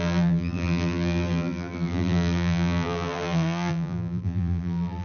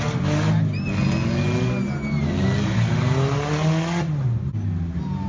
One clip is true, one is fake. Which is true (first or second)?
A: second